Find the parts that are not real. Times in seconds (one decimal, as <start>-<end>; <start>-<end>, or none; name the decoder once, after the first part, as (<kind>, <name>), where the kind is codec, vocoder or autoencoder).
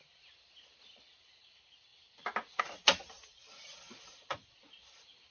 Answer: none